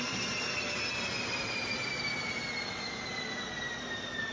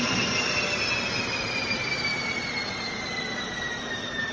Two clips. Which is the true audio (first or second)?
first